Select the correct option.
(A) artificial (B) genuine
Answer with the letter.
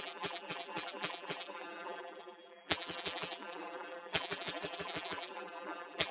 A